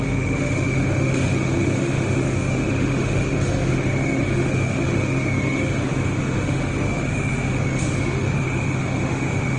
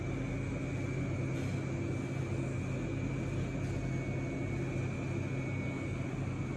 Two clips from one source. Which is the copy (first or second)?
first